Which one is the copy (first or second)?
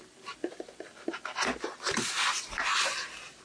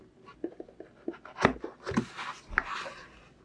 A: first